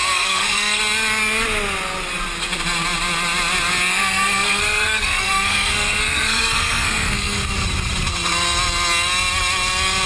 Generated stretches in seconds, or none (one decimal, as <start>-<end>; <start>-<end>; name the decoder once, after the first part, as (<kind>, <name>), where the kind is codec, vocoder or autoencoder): 0.0-0.8 (codec, SNAC); 3.9-7.5